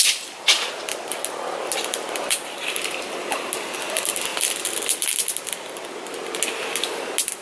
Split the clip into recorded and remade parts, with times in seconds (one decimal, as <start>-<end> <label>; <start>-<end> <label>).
0.0-7.4 recorded